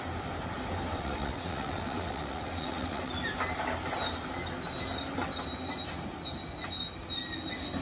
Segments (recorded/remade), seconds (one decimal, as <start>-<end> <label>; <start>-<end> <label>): 0.0-0.9 recorded; 0.9-3.1 remade; 3.1-7.8 recorded